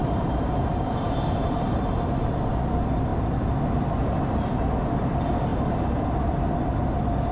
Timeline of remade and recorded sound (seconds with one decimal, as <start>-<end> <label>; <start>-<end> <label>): 0.0-2.5 remade; 2.5-5.5 recorded; 5.5-6.4 remade; 6.4-7.3 recorded